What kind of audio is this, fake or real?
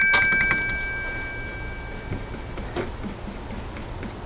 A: real